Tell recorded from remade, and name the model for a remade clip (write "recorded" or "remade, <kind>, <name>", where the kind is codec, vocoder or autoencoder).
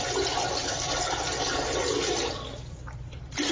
remade, vocoder, BigVGAN v2